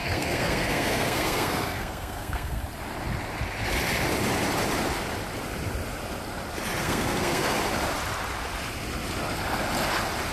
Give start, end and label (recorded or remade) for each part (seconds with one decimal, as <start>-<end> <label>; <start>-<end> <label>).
0.0-2.6 remade; 2.6-6.8 recorded; 6.8-7.6 remade; 7.6-10.3 recorded